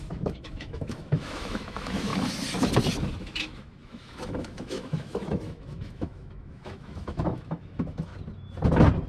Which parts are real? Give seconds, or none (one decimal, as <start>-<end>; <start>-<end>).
2.1-3.2; 8.1-9.1